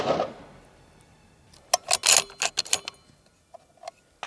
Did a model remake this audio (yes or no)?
no